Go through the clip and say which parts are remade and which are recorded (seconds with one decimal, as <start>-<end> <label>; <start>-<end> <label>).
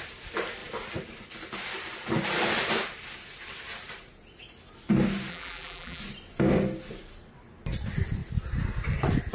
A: 0.0-5.3 recorded; 5.3-6.0 remade; 6.0-9.3 recorded